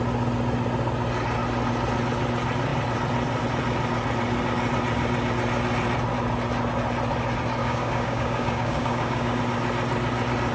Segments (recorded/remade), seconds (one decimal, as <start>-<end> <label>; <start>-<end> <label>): 0.0-7.6 recorded; 7.6-9.4 remade; 9.4-10.5 recorded